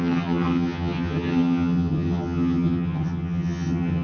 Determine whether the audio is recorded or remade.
remade